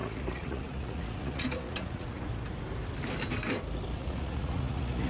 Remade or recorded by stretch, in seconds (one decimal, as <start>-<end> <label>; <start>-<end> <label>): 0.0-2.3 remade; 2.3-4.0 recorded; 4.0-5.1 remade